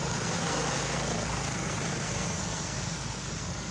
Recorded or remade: remade